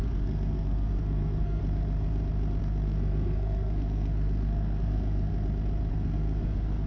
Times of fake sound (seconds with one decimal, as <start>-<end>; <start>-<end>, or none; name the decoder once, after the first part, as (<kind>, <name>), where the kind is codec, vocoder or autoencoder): 0.0-1.6 (codec, SNAC); 2.6-5.3; 5.9-6.9